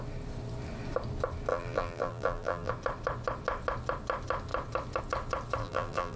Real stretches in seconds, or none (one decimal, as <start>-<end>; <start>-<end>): 0.0-1.5; 2.7-5.6